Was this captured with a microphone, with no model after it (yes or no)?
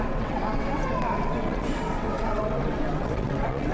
no